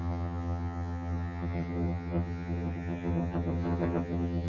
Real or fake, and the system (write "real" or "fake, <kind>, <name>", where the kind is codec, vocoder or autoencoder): fake, vocoder, HiFi-GAN